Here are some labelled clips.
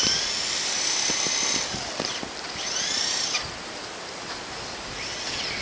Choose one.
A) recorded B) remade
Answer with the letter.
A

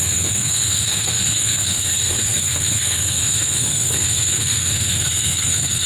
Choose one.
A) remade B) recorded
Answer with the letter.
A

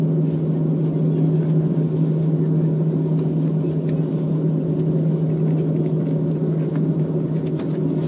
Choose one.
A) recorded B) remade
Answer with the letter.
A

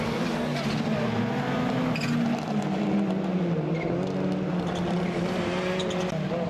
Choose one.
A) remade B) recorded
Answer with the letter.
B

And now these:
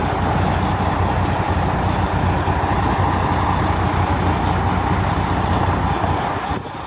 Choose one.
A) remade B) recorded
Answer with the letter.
B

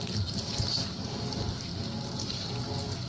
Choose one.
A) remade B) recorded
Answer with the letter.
B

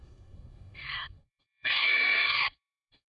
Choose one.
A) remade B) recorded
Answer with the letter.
A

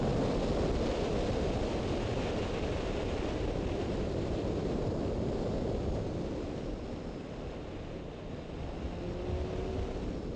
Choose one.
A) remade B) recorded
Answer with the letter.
B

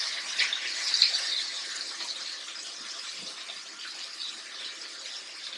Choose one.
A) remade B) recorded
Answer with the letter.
B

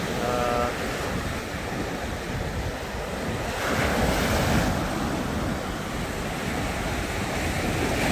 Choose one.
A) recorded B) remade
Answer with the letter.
A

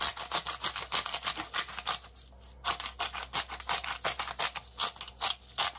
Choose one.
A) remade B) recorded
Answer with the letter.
B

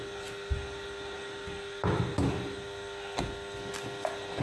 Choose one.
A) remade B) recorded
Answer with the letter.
B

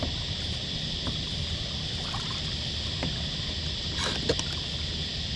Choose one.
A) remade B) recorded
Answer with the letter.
B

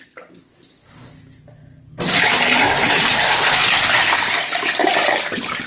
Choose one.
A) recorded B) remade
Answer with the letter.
A